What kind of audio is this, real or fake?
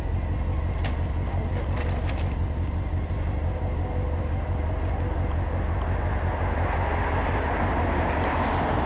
real